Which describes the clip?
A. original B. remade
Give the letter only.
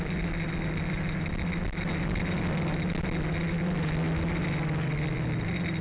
A